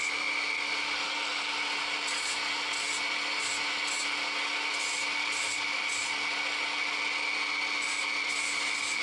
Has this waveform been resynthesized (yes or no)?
no